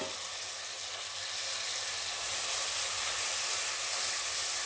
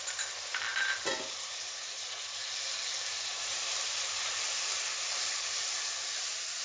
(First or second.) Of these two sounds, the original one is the first